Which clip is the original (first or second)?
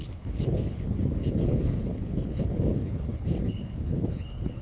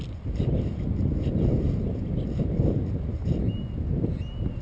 second